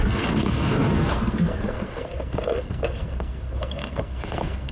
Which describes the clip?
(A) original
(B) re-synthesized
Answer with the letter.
B